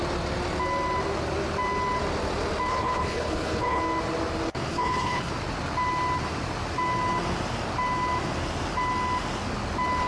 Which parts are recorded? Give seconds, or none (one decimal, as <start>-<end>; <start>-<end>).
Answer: 0.0-2.7; 3.8-4.7; 5.3-10.1